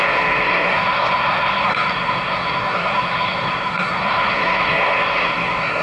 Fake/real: fake